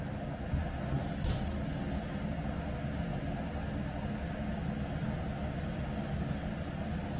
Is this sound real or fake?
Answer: real